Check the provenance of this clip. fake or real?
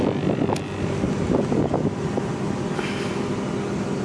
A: real